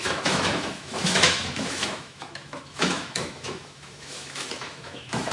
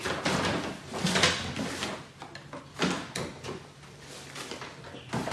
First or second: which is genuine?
second